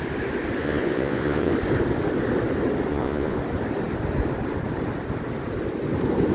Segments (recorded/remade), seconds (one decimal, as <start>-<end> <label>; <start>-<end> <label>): 0.0-0.6 recorded; 0.6-1.5 remade; 1.5-2.9 recorded; 2.9-3.4 remade; 3.4-6.3 recorded